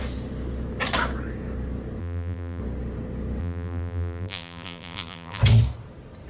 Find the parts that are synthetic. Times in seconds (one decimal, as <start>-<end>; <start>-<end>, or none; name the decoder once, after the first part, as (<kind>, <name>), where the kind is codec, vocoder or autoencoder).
2.0-2.6 (vocoder, BigVGAN v2); 3.4-5.4